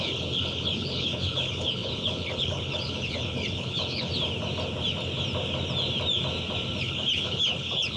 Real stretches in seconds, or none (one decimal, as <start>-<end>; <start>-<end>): 4.1-6.8